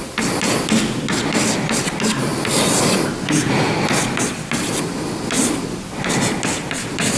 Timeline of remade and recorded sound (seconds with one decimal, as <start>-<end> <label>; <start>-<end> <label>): 0.0-7.2 recorded